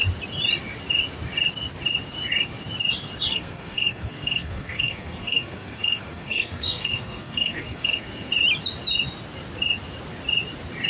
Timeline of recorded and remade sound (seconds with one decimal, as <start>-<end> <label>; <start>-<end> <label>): 0.0-3.3 recorded; 3.3-8.3 remade; 8.3-10.9 recorded